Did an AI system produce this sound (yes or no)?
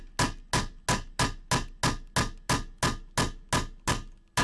no